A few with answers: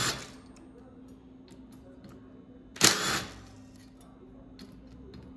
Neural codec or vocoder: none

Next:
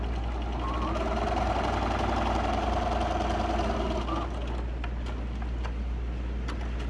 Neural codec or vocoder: none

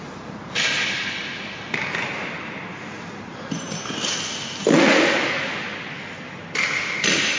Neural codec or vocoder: none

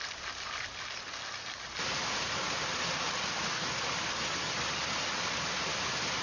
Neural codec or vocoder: none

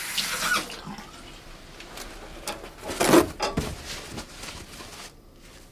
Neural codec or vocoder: none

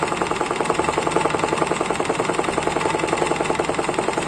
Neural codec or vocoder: none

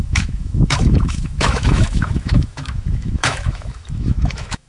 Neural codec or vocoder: autoencoder, DAC-VAE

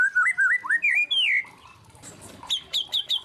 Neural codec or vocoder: none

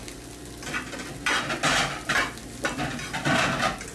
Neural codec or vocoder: none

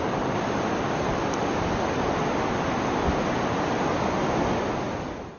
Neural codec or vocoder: none